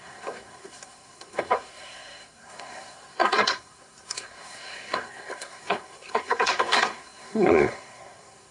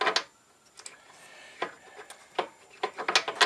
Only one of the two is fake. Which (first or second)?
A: first